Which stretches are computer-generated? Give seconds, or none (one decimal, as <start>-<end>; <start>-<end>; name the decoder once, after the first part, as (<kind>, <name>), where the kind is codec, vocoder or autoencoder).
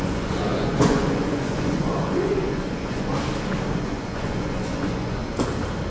0.0-3.1 (vocoder, Vocos); 3.7-5.2